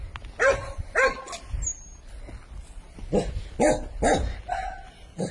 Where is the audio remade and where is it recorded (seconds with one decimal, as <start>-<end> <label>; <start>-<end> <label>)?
0.0-5.3 recorded